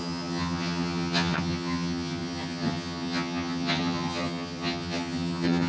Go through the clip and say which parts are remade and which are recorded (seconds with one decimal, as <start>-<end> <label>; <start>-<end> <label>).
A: 0.0-5.7 remade